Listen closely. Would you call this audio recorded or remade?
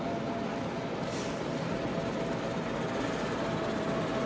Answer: recorded